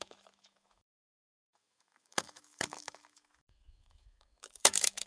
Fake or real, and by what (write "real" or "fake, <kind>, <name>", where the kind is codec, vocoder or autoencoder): fake, autoencoder, DAC-VAE